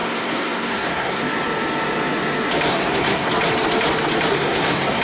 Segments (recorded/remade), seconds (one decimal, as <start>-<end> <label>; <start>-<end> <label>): 0.0-1.2 remade; 1.2-2.7 recorded; 2.7-3.3 remade; 3.3-4.3 recorded; 4.3-5.0 remade